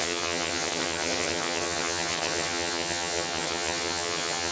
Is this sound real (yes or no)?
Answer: no